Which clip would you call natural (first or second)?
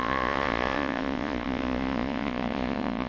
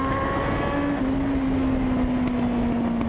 second